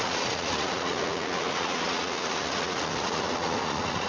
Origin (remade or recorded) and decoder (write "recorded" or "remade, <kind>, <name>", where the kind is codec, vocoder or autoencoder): remade, vocoder, Vocos